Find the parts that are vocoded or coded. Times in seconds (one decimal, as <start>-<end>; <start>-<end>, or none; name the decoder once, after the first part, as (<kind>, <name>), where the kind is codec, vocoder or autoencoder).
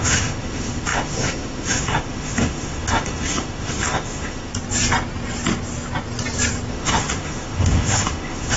0.0-4.5 (autoencoder, DAC-VAE); 6.7-8.6